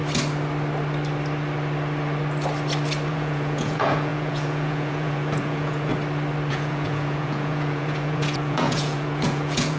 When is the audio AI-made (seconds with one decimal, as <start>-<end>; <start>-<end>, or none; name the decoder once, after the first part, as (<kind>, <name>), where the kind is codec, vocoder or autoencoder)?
3.1-5.9 (vocoder, Vocos); 6.5-9.8